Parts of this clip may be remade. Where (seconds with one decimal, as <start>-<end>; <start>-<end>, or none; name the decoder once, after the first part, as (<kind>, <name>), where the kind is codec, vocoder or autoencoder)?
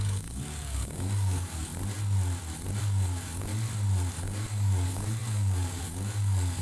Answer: 0.0-1.7 (codec, DAC); 2.8-3.5; 4.1-6.6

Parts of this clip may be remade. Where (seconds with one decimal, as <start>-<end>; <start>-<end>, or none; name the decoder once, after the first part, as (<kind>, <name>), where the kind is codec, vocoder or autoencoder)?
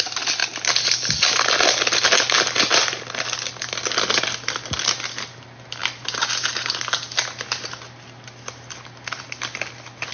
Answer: none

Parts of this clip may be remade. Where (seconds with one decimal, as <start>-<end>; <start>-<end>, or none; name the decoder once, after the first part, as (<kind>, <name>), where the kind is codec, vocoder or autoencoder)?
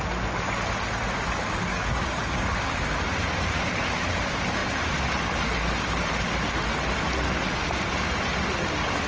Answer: 1.7-2.9 (codec, DAC)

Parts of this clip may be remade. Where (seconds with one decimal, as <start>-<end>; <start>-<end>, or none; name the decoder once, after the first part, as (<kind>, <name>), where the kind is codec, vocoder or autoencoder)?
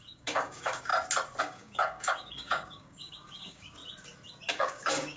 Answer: 0.0-0.9 (codec, DAC); 1.4-3.8; 4.5-5.2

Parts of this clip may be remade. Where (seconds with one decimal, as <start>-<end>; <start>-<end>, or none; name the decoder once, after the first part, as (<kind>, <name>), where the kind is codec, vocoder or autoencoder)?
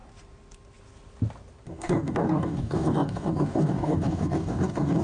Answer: 1.7-5.0 (codec, DAC)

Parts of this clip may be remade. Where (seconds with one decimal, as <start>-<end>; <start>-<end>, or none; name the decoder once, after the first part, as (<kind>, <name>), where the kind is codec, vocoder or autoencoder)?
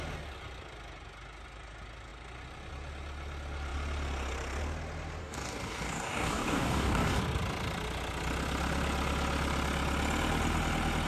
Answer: 5.2-7.2 (codec, DAC)